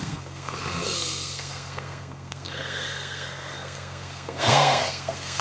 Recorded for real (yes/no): no